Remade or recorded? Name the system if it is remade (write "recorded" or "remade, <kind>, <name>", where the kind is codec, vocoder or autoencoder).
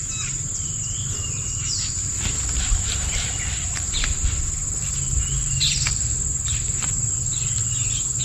remade, vocoder, BigVGAN v2